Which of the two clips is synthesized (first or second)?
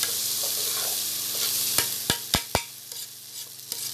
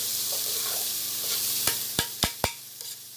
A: second